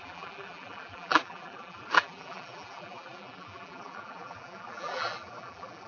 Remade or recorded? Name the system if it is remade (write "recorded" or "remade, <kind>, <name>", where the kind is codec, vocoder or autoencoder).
remade, vocoder, BigVGAN v2